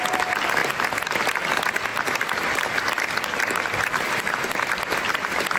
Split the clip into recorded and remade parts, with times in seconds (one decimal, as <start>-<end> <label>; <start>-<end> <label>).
0.0-0.6 recorded; 0.6-1.3 remade; 1.3-1.9 recorded; 1.9-5.6 remade